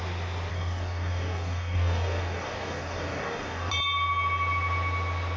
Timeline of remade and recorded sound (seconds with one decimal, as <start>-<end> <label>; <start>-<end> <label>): 0.0-0.5 recorded; 0.5-3.7 remade; 3.7-5.4 recorded